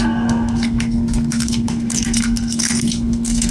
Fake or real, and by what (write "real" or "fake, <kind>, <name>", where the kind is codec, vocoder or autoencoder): fake, codec, SNAC